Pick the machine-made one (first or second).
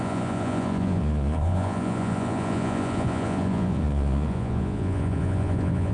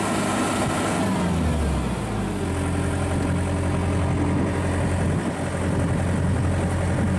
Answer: first